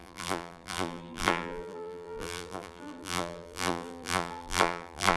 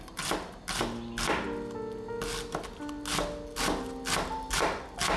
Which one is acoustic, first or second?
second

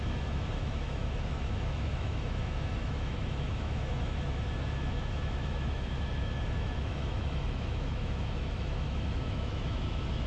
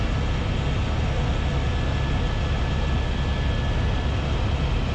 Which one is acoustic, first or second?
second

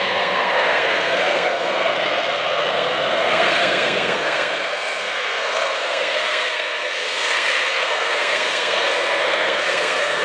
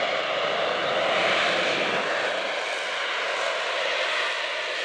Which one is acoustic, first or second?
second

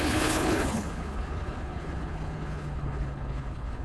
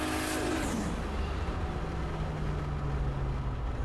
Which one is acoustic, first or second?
second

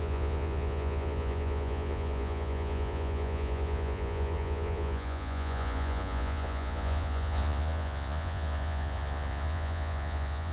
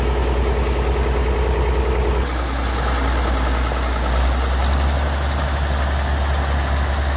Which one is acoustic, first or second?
second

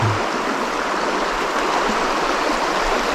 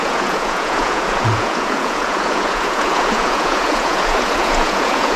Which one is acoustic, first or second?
first